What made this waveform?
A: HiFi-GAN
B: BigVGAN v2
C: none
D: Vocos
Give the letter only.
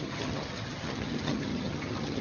A